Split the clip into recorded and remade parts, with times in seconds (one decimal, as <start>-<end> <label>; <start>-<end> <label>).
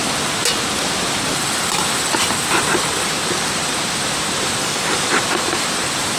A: 0.0-4.6 recorded; 4.6-5.2 remade; 5.2-6.2 recorded